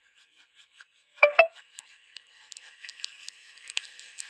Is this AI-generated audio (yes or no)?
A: yes